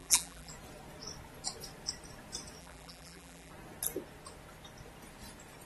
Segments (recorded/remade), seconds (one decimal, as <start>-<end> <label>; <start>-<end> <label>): 0.0-0.5 remade; 0.5-2.6 recorded; 2.6-3.5 remade; 3.5-5.7 recorded